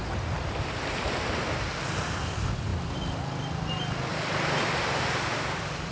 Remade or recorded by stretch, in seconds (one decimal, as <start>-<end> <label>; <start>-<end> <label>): 0.0-4.1 recorded; 4.1-5.9 remade